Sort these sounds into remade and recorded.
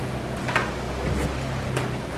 recorded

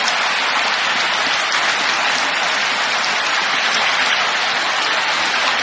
recorded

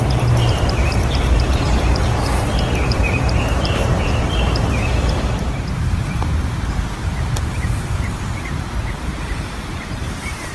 remade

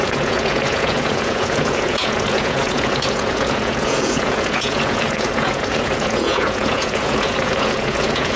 remade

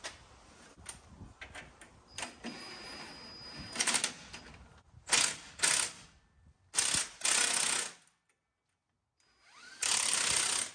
recorded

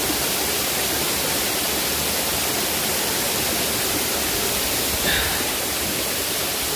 recorded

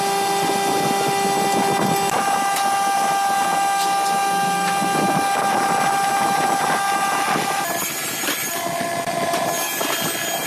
recorded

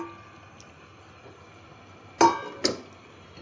recorded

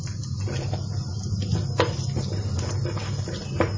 recorded